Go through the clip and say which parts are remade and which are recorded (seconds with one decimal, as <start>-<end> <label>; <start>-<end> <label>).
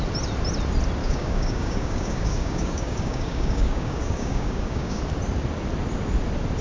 0.0-1.0 recorded; 1.0-5.0 remade; 5.0-6.6 recorded